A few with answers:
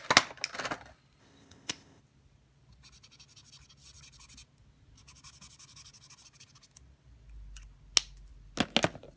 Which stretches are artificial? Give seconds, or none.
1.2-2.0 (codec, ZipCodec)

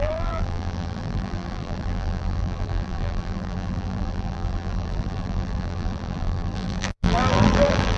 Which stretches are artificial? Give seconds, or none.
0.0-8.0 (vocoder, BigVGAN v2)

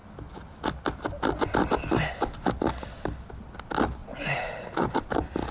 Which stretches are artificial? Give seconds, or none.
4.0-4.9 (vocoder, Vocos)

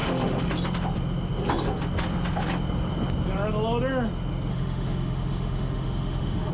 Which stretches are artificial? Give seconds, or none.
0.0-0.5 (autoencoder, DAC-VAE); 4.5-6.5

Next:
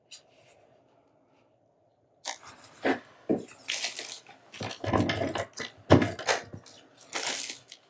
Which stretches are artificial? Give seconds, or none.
none

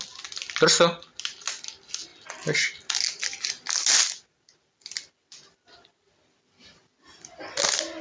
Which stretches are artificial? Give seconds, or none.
none

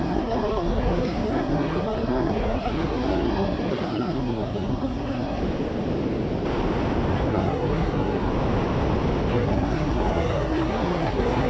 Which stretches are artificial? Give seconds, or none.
0.0-5.4 (codec, SNAC); 7.3-8.3; 9.3-11.5

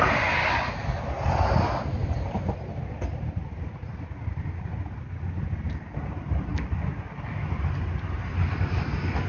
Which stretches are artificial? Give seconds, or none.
none